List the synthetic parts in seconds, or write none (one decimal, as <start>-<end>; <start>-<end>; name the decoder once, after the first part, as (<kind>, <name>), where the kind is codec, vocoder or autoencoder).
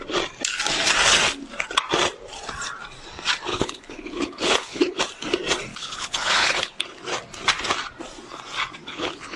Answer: 3.5-5.0 (codec, HILCodec); 5.7-6.8; 8.8-9.4